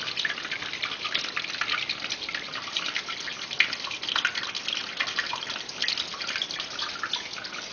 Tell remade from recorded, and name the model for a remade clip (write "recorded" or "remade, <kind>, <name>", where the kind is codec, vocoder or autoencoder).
recorded